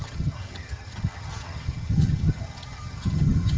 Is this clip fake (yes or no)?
yes